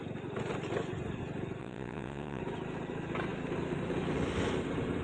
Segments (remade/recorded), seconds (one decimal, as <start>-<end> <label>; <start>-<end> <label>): 0.0-1.6 recorded; 1.6-2.4 remade; 2.4-5.0 recorded